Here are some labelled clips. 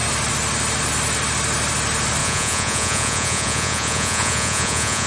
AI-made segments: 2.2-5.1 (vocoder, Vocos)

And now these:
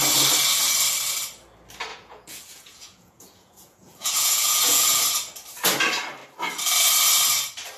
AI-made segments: 1.9-5.0 (vocoder, Vocos)

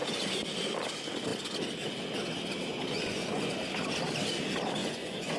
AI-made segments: 2.7-3.6 (vocoder, Vocos); 4.8-5.4